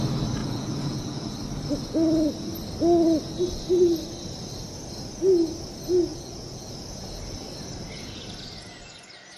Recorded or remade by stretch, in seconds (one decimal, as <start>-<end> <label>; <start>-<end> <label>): 0.0-0.4 recorded; 0.4-1.3 remade; 1.3-6.1 recorded; 6.1-6.7 remade; 6.7-9.4 recorded